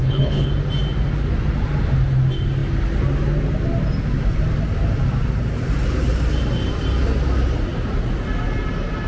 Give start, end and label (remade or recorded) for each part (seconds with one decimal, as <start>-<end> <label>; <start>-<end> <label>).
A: 0.0-0.5 remade; 0.5-9.1 recorded